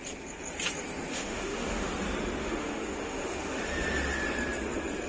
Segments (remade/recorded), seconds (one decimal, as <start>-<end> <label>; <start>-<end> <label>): 0.0-1.1 recorded; 1.1-1.9 remade; 1.9-2.4 recorded; 2.4-3.6 remade; 3.6-5.1 recorded